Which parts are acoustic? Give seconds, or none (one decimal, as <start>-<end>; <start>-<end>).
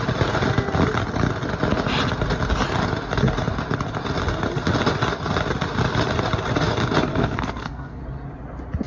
0.0-7.1; 8.0-8.9